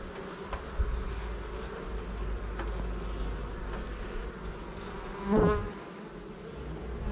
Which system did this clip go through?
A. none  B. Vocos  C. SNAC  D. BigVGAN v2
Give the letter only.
A